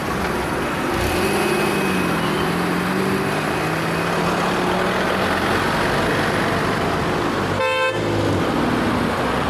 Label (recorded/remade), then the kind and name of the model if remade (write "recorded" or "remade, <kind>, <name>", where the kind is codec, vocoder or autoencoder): recorded